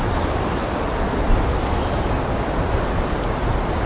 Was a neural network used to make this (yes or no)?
no